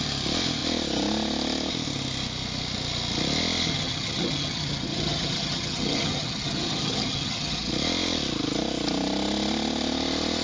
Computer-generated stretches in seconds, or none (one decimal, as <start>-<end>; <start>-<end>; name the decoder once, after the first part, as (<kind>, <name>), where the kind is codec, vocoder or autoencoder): 3.7-7.7 (vocoder, HiFi-GAN)